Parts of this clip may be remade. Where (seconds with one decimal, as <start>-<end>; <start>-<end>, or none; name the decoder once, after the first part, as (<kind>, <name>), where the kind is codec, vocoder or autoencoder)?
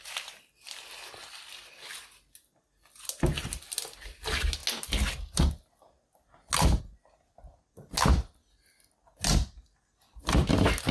none